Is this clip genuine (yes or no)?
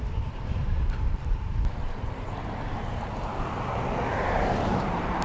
no